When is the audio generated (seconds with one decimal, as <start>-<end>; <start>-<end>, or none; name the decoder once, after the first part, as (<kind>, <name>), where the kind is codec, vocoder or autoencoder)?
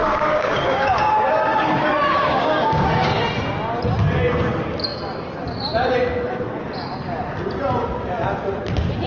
0.0-3.2 (codec, DAC)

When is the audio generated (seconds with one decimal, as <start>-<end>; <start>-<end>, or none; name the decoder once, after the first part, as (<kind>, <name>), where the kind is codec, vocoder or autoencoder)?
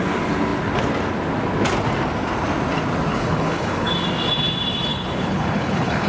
3.1-3.9 (codec, HILCodec); 4.9-6.1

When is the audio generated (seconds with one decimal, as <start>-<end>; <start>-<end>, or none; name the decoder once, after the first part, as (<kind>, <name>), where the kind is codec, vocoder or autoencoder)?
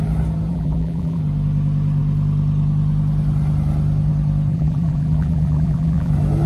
0.5-1.2 (vocoder, BigVGAN v2); 4.5-6.1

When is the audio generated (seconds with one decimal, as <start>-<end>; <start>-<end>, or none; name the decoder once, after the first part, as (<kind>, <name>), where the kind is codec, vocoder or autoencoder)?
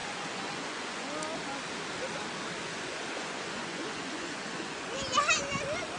0.0-1.1 (vocoder, Vocos); 2.6-4.9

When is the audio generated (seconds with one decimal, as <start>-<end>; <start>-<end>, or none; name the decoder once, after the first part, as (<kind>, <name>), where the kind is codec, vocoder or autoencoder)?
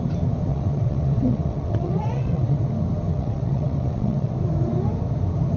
0.5-2.6 (vocoder, WaveNeXt); 3.1-4.3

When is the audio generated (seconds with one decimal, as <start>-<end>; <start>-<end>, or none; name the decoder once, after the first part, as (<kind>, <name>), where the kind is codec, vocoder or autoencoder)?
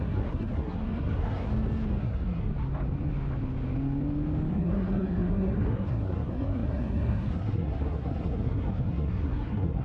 0.0-1.5 (codec, SNAC); 2.0-2.5; 4.5-9.8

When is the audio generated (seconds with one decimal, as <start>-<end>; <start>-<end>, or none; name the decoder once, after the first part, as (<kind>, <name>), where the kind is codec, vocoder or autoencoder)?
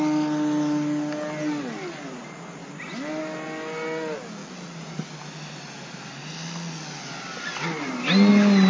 none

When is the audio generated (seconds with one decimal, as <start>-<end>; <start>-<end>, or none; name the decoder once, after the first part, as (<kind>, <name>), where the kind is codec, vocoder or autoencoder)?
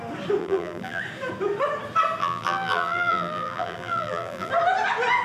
0.4-1.0 (vocoder, BigVGAN v2); 2.2-4.5